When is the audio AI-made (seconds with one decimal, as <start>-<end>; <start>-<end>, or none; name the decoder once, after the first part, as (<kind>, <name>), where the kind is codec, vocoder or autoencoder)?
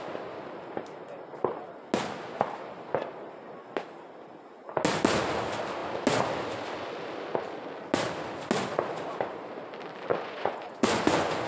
10.1-11.5 (vocoder, Vocos)